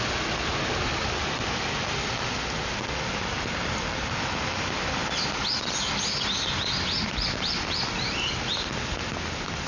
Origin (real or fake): real